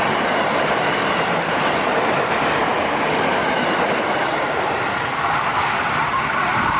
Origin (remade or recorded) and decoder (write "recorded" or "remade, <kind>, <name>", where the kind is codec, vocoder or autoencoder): remade, vocoder, BigVGAN v2